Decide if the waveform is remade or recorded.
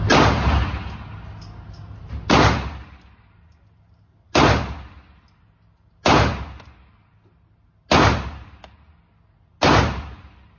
recorded